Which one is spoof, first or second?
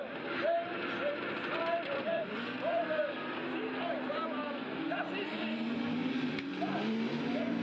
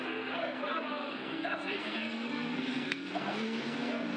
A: second